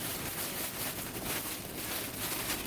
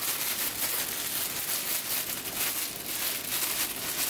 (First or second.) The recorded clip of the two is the second